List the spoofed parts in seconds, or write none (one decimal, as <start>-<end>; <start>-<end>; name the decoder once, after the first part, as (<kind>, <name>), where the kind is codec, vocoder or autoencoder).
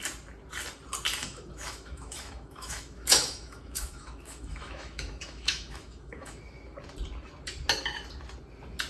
1.2-6.4 (autoencoder, DAC-VAE)